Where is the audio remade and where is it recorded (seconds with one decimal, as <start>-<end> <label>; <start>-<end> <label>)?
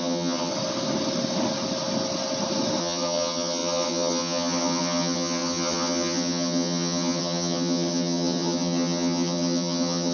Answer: 0.0-0.5 remade; 0.5-2.8 recorded; 2.8-10.1 remade